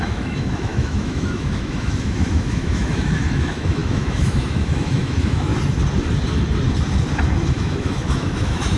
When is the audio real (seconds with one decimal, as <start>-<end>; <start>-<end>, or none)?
5.5-7.5